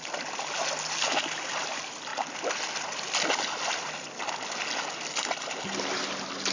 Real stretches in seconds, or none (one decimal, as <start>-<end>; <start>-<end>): 0.0-6.5